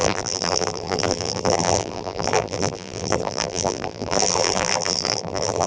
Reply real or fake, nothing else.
fake